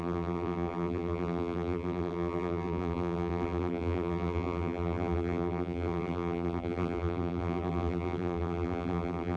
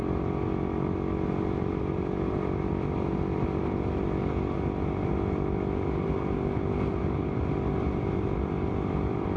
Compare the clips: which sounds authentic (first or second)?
second